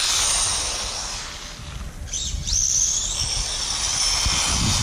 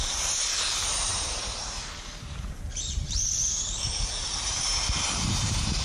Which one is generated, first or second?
second